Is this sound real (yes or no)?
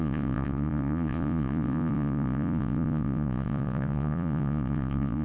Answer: no